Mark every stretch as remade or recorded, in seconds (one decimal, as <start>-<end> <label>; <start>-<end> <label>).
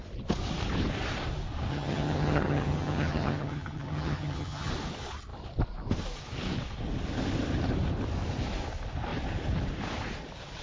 0.0-1.7 recorded; 1.7-4.7 remade; 4.7-10.6 recorded